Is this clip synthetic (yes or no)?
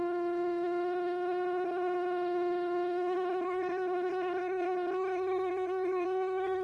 yes